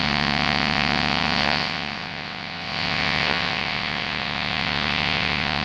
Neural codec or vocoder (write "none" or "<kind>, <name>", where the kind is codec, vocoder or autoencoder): vocoder, WaveNeXt